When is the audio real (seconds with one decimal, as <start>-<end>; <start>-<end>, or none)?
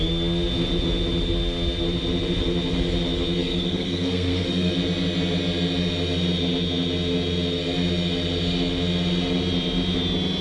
0.0-3.4; 4.7-10.4